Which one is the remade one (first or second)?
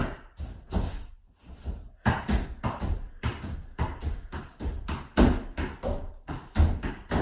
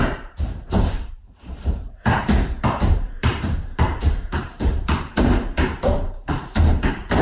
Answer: second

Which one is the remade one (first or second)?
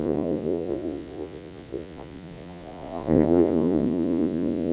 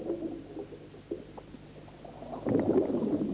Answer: first